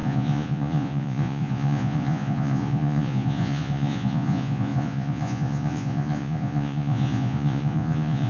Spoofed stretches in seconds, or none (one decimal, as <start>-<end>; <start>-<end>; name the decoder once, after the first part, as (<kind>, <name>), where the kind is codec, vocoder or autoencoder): 0.0-8.3 (vocoder, Vocos)